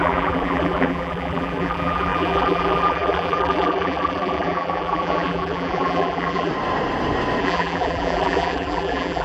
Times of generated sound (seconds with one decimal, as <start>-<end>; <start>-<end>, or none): 0.0-6.5; 7.4-9.2